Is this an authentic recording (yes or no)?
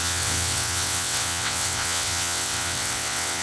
no